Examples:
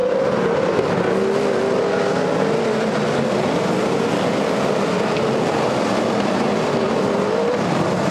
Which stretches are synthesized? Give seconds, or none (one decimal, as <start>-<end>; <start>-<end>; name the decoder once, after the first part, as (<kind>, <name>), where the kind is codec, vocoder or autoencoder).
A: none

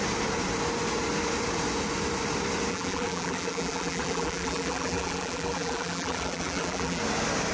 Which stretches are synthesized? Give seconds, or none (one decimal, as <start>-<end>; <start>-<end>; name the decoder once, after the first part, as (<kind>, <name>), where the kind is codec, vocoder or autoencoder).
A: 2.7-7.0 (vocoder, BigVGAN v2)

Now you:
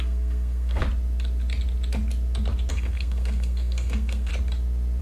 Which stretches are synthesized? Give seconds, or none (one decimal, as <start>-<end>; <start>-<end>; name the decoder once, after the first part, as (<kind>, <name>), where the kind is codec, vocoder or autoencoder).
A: 0.0-0.8 (codec, SNAC); 2.7-4.3

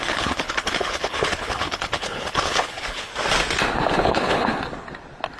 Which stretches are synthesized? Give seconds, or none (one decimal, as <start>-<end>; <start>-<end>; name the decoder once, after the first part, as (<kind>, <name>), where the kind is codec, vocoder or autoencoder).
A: 0.0-3.1 (codec, HILCodec); 3.9-4.5

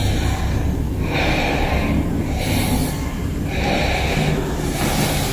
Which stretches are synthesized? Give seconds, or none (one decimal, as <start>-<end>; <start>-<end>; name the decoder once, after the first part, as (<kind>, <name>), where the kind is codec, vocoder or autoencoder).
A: none

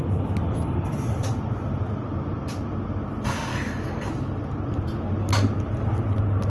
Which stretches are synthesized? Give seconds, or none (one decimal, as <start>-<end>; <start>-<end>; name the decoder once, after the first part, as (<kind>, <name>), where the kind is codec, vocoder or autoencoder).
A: 3.5-4.1 (codec, DAC)

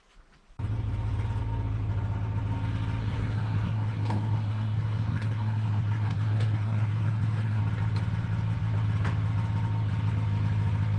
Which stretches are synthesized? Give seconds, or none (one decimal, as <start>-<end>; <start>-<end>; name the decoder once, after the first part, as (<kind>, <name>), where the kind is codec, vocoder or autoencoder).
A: 3.0-7.6 (codec, SNAC)

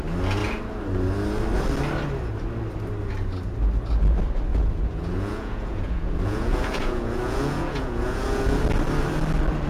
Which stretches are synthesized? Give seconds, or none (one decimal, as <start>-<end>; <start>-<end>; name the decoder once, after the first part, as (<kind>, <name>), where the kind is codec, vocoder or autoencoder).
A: 4.5-8.6 (vocoder, Vocos)